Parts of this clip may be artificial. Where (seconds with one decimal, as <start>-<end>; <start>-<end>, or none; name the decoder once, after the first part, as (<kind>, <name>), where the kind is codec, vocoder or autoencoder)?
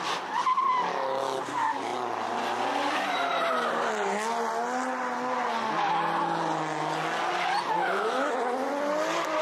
7.8-8.3 (autoencoder, DAC-VAE)